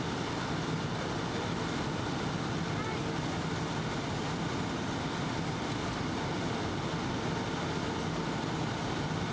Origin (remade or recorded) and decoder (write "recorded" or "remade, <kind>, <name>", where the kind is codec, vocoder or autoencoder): recorded